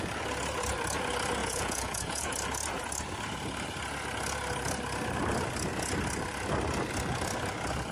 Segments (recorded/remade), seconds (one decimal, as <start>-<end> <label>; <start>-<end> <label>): 0.0-1.4 recorded; 1.4-2.3 remade; 2.3-7.9 recorded

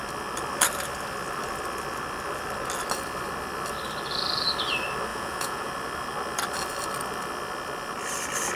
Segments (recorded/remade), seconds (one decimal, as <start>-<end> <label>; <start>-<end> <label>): 0.0-5.1 recorded; 5.1-5.7 remade; 5.7-8.6 recorded

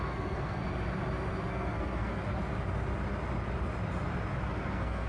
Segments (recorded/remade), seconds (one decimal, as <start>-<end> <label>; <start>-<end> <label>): 0.0-0.6 remade; 0.6-1.5 recorded; 1.5-2.2 remade; 2.2-4.5 recorded; 4.5-5.1 remade